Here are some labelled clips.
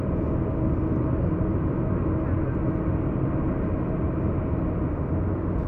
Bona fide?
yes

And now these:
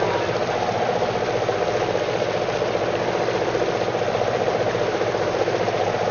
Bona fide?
yes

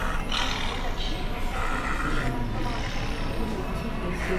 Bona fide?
yes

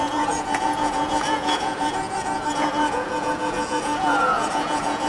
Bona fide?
no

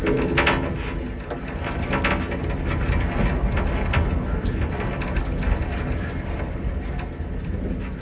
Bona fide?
yes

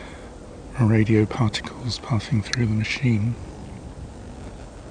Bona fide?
yes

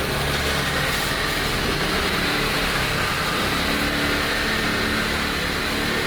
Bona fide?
yes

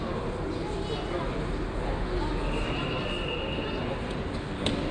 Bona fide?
yes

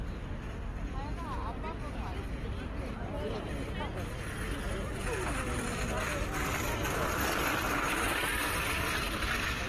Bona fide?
yes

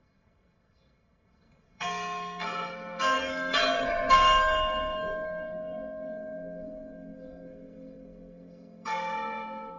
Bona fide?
no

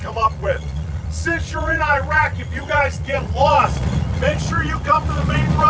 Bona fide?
no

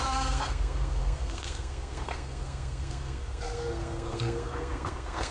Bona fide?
no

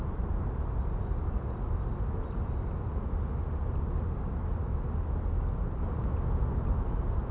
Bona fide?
yes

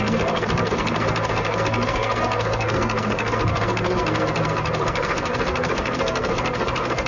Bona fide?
no